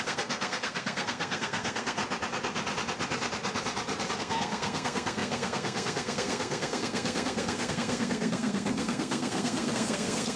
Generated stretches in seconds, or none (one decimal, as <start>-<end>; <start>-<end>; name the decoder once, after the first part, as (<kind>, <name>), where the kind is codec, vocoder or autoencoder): 0.0-2.0 (codec, SNAC); 4.2-10.4